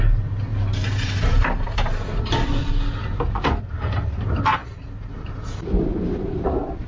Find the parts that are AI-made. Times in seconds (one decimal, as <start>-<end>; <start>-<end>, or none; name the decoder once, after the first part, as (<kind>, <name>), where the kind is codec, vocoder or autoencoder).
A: 0.5-2.7 (vocoder, BigVGAN v2); 4.6-6.9